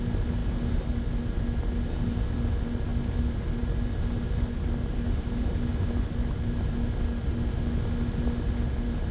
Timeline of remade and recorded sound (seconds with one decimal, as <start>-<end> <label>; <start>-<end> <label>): 0.0-9.1 recorded